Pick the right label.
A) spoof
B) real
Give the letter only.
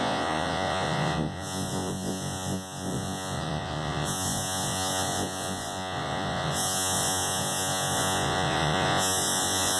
A